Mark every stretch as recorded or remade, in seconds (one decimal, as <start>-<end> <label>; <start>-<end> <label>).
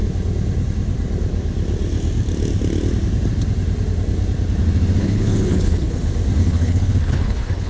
0.0-5.0 recorded; 5.0-6.0 remade; 6.0-6.4 recorded; 6.4-7.7 remade